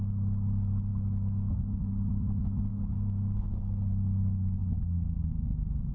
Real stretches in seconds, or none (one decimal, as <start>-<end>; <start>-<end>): 0.0-0.9; 1.6-2.7; 3.6-5.9